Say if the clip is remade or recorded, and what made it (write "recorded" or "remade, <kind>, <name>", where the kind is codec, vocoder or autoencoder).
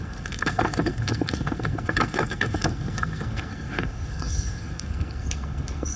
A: remade, codec, SNAC